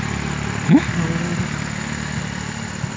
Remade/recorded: recorded